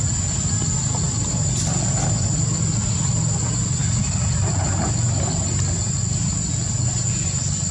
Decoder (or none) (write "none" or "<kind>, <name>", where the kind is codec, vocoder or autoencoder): none